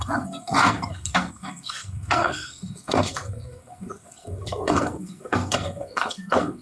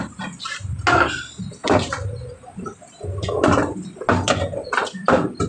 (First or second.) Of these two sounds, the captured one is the second